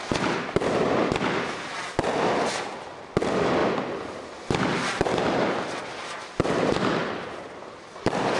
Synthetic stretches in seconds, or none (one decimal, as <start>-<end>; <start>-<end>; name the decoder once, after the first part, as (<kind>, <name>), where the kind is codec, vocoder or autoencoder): none